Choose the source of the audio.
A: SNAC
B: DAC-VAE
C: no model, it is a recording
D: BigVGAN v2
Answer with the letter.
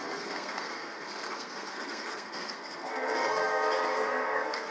A